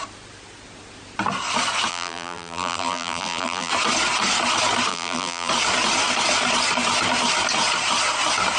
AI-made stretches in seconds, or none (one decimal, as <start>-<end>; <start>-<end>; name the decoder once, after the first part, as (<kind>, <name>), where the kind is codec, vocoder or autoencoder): 1.9-3.7 (vocoder, BigVGAN v2); 4.9-5.5